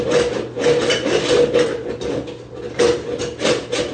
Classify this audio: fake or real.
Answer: real